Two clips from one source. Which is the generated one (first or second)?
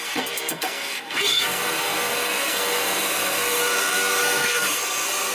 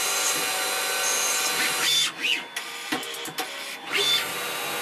first